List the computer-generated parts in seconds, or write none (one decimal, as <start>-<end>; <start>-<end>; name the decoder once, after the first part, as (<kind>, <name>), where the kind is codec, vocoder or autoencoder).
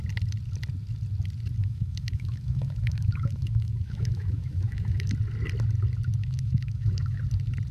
1.6-5.1 (autoencoder, DAC-VAE); 6.2-7.2